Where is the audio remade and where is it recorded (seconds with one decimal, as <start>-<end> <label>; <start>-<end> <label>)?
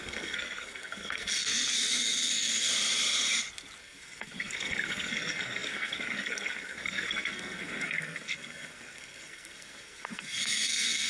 0.0-2.7 remade; 2.7-3.8 recorded; 3.8-11.1 remade